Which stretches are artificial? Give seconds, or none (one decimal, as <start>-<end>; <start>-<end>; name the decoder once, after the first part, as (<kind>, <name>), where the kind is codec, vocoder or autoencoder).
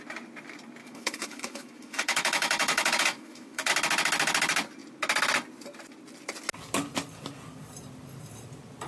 0.8-3.7 (autoencoder, DAC-VAE)